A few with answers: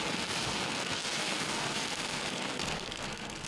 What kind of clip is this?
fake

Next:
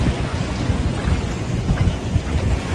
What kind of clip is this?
fake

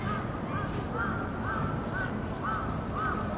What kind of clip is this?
real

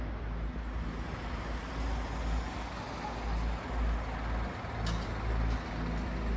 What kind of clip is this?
real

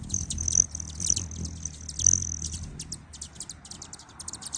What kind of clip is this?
real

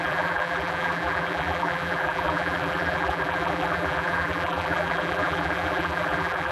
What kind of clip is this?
fake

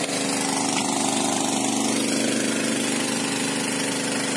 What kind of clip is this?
real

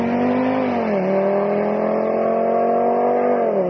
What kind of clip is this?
real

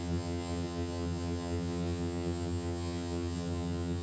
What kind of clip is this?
fake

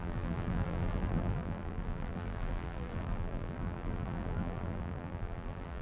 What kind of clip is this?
fake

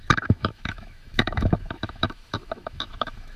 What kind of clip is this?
fake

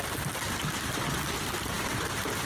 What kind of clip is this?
real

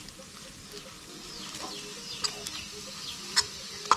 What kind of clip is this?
real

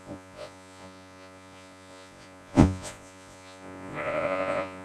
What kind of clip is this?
fake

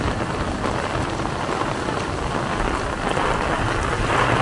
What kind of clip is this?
real